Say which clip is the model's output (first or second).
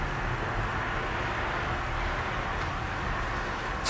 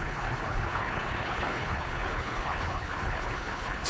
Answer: second